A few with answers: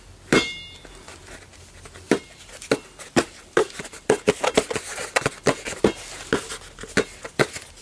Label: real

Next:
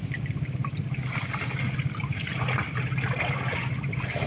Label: real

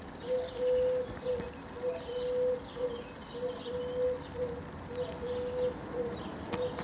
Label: real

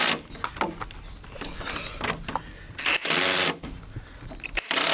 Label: real